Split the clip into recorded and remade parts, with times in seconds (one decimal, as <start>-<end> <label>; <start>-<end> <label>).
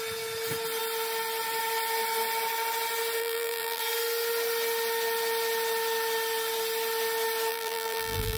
0.0-3.2 recorded; 3.2-3.8 remade; 3.8-7.5 recorded; 7.5-8.4 remade